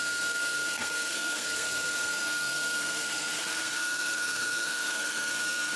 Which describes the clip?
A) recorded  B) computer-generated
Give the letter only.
B